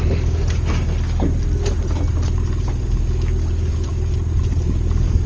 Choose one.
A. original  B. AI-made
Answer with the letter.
A